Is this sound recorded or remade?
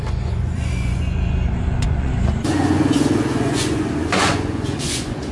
remade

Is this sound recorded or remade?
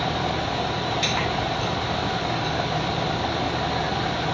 recorded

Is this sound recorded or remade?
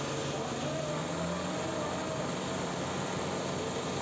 recorded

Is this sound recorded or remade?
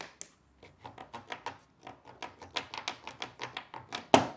recorded